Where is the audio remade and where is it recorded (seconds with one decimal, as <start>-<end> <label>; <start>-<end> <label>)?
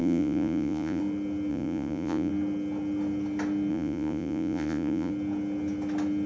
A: 0.0-1.0 remade; 1.0-1.5 recorded; 1.5-2.3 remade; 2.3-3.7 recorded; 3.7-5.1 remade; 5.1-6.3 recorded